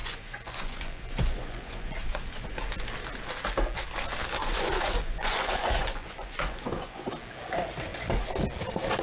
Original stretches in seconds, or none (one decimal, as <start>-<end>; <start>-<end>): 2.6-4.4; 7.1-9.0